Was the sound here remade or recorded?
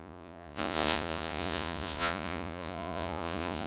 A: remade